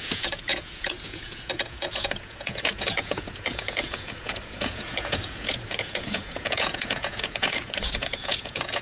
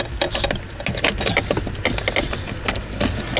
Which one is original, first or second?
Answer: second